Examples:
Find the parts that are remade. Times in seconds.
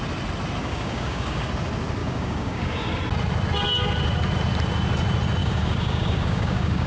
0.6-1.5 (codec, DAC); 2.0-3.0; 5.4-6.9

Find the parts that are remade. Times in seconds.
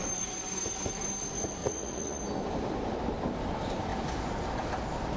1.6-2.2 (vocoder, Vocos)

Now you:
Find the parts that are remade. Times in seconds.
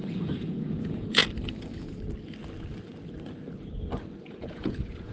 0.0-1.2 (vocoder, Vocos); 4.2-5.1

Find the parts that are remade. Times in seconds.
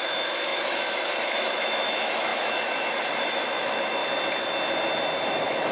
0.0-4.0 (autoencoder, DAC-VAE); 5.3-5.7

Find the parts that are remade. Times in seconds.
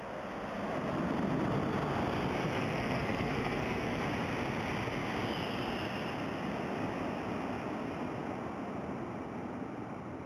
2.4-4.0 (codec, SNAC)